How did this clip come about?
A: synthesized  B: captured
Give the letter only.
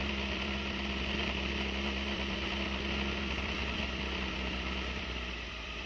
A